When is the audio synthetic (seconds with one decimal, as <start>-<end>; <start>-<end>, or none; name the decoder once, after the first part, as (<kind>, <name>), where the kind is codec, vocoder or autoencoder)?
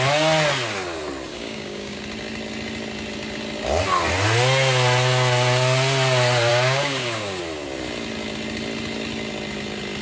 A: 1.3-2.0 (codec, DAC); 6.5-7.4